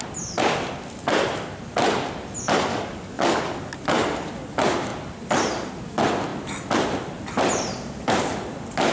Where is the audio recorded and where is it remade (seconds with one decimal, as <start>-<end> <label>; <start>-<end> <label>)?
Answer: 0.0-2.7 recorded; 2.7-3.6 remade; 3.6-8.9 recorded